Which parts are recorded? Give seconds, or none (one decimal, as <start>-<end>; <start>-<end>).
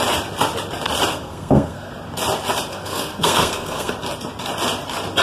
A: 0.0-1.1; 1.9-2.7; 3.9-5.2